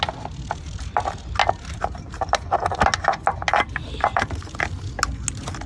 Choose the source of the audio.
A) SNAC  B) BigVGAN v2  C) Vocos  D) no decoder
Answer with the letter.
D